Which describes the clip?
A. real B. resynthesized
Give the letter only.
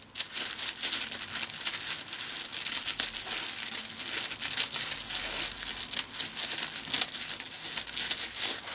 A